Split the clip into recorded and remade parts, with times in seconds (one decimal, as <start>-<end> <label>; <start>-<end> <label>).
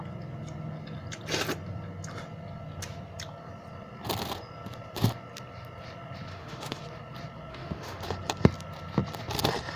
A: 0.0-6.3 recorded; 6.3-6.8 remade; 6.8-7.5 recorded; 7.5-8.0 remade; 8.0-9.8 recorded